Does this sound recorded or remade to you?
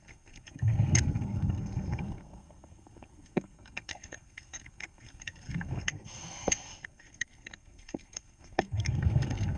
remade